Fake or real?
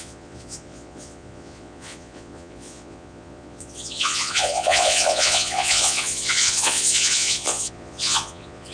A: fake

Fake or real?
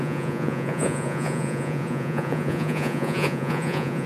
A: fake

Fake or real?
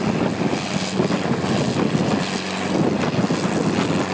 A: real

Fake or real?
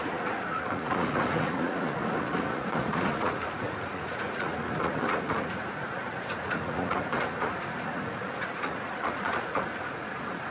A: fake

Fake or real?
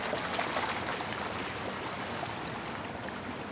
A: real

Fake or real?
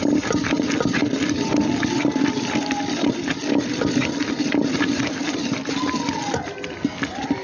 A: real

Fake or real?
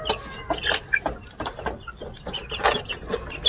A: real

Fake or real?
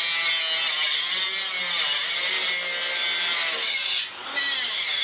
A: real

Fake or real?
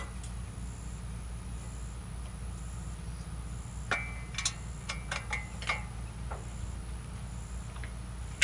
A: real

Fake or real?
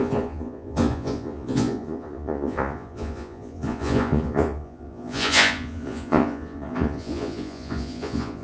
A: fake